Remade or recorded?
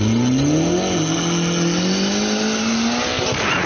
recorded